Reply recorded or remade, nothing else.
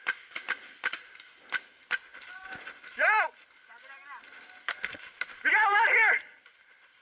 recorded